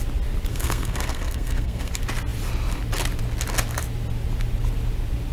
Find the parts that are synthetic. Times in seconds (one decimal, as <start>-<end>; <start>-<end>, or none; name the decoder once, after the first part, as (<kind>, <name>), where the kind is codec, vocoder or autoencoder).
0.5-1.9 (codec, SNAC)